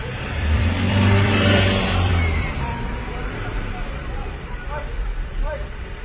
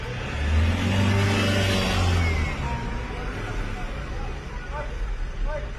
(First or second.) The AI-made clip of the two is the first